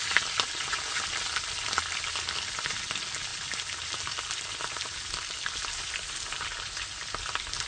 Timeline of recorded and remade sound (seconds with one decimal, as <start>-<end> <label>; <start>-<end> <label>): 0.0-7.7 recorded